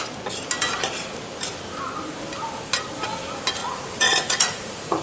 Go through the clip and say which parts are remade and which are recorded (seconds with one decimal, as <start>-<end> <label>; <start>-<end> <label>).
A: 0.0-3.6 recorded; 3.6-5.0 remade